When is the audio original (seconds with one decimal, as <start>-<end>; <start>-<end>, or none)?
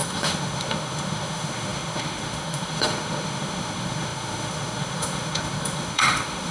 none